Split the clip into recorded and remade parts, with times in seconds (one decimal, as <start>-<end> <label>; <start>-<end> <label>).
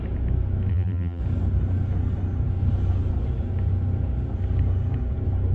0.0-0.7 recorded; 0.7-1.2 remade; 1.2-5.5 recorded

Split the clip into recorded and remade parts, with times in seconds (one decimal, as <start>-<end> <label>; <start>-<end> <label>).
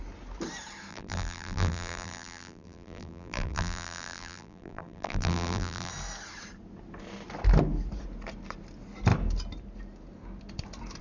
0.0-0.9 recorded; 0.9-5.9 remade; 5.9-11.0 recorded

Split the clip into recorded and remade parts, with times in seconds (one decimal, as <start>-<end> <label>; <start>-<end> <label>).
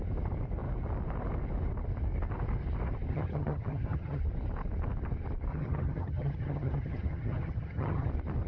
0.0-3.1 recorded; 3.1-4.2 remade; 4.2-5.5 recorded; 5.5-8.1 remade; 8.1-8.5 recorded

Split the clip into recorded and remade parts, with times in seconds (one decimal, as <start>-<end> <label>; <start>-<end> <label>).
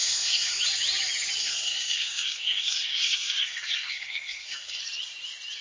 0.0-0.5 remade; 0.5-1.4 recorded; 1.4-4.8 remade; 4.8-5.6 recorded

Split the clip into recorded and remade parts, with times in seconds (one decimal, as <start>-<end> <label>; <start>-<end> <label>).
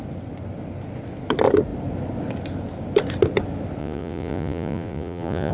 0.0-3.8 recorded; 3.8-5.5 remade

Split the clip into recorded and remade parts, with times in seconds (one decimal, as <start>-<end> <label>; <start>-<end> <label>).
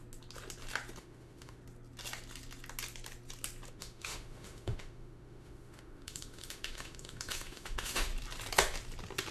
0.0-1.0 recorded; 1.0-1.6 remade; 1.6-3.7 recorded; 3.7-8.1 remade; 8.1-9.3 recorded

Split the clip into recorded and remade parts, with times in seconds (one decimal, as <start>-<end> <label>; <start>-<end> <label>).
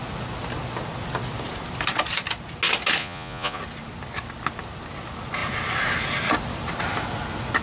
0.0-3.0 recorded; 3.0-3.6 remade; 3.6-7.6 recorded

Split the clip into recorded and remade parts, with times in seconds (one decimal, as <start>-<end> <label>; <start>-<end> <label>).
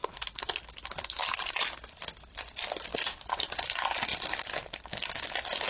0.0-5.7 recorded